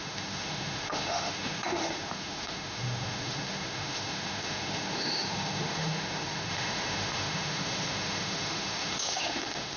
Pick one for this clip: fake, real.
fake